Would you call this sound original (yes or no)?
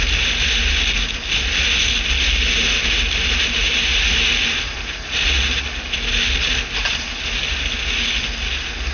yes